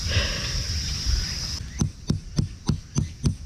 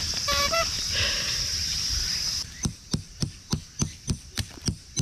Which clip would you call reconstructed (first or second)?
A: second